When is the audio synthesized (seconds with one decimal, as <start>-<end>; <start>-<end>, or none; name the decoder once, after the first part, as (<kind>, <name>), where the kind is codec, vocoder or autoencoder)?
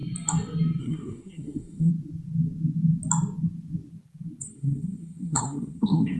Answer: 0.8-1.9 (codec, SNAC); 4.4-6.2